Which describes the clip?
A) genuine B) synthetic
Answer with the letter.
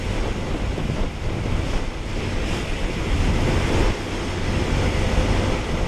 A